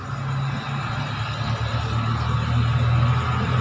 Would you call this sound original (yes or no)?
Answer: yes